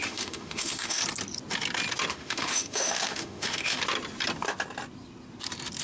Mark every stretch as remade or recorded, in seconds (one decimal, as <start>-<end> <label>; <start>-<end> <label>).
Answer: 0.0-1.0 remade; 1.0-2.1 recorded; 2.1-3.8 remade; 3.8-5.8 recorded